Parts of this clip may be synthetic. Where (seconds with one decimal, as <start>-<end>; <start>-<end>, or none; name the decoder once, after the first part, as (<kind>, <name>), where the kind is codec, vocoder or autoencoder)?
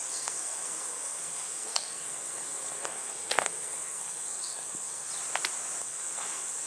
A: 0.0-5.1 (codec, SNAC); 5.8-6.7